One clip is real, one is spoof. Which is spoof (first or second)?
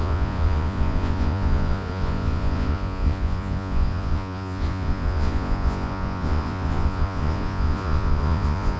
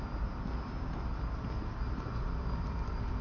first